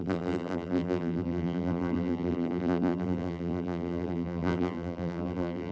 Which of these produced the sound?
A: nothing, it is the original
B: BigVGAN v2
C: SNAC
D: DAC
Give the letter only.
B